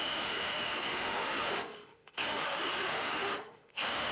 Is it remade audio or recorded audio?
remade